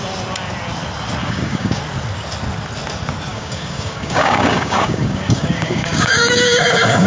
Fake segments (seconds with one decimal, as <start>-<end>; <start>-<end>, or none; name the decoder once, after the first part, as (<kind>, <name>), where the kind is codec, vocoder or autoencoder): 1.2-1.8 (codec, DAC); 3.3-7.1